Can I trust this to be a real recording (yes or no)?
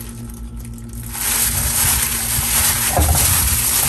yes